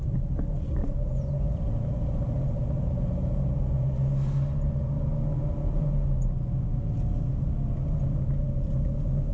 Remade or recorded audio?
recorded